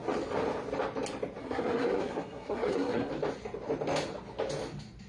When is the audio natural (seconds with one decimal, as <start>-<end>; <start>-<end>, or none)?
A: 0.0-1.4; 3.1-5.1